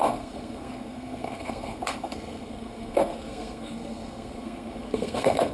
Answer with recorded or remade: remade